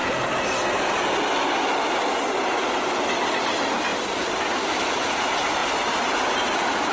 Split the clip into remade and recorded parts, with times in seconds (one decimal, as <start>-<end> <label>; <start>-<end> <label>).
0.0-6.9 recorded